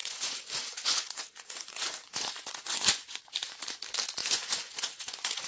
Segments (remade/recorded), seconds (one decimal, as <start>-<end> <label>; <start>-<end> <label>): 0.0-3.2 remade; 3.2-4.2 recorded; 4.2-5.5 remade